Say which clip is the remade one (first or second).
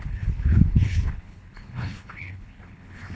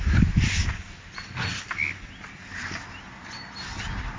first